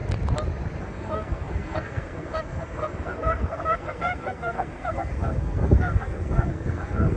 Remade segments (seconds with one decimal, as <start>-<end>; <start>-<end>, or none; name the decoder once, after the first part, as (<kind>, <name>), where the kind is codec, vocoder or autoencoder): 0.8-7.2 (codec, SNAC)